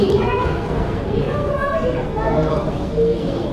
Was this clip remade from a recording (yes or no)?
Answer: yes